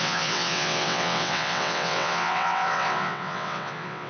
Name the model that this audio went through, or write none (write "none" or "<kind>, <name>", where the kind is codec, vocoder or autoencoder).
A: vocoder, WaveNeXt